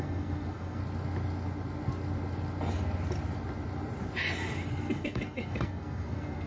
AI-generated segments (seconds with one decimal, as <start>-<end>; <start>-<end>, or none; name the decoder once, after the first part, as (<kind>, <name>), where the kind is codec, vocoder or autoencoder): 0.0-0.8 (codec, SNAC); 4.7-6.5